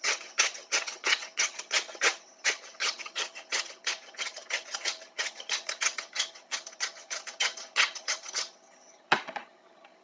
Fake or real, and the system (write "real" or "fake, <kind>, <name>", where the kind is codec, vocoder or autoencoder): fake, vocoder, HiFi-GAN